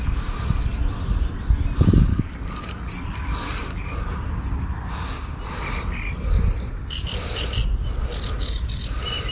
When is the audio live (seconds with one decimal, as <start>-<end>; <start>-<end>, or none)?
0.0-2.1; 2.9-3.3; 3.8-9.3